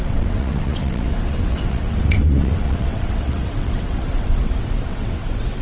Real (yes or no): no